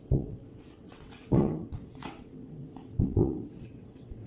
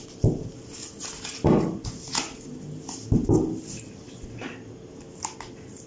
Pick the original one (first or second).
second